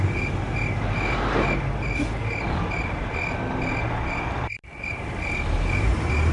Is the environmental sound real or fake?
real